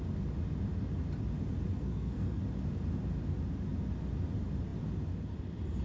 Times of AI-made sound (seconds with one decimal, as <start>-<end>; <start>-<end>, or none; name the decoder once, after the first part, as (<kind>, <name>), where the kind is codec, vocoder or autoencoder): 1.7-2.4 (codec, SNAC)